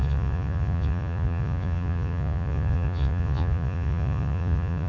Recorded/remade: remade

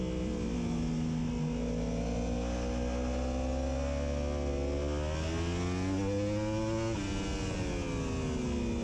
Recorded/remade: recorded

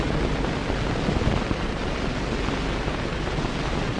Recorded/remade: recorded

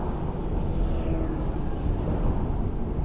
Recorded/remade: recorded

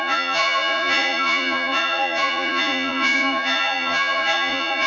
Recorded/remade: remade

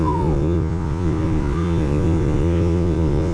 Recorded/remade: remade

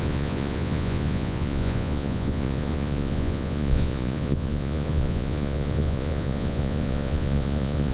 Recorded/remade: remade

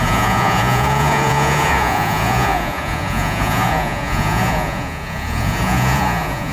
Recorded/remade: remade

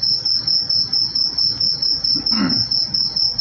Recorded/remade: recorded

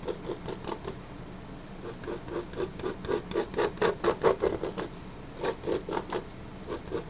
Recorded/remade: recorded